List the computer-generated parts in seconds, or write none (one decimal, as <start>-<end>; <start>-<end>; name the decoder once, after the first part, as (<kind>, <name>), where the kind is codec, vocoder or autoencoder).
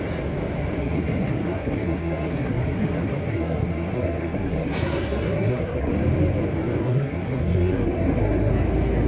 0.8-5.9 (codec, SNAC); 6.8-8.5